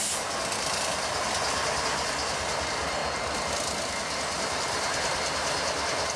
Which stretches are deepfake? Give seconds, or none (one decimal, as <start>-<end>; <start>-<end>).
none